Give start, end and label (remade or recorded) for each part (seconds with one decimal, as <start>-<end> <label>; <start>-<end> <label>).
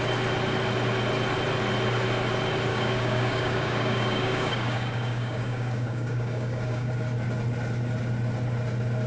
0.0-2.7 recorded; 2.7-6.9 remade; 6.9-9.1 recorded